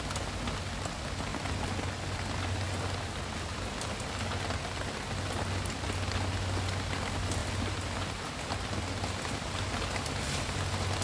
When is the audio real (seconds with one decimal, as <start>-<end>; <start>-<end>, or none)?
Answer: 0.0-11.0